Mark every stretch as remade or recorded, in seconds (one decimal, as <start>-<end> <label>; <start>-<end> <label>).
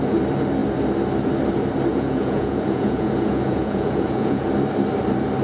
0.0-1.9 recorded; 1.9-4.5 remade; 4.5-5.4 recorded